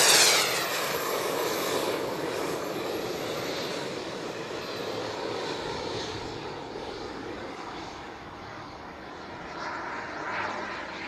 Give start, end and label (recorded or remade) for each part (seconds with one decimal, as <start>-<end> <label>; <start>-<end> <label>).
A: 0.0-0.7 recorded; 0.7-2.9 remade; 2.9-3.7 recorded; 3.7-4.6 remade; 4.6-5.0 recorded; 5.0-9.1 remade; 9.1-11.1 recorded